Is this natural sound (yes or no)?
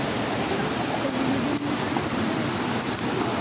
yes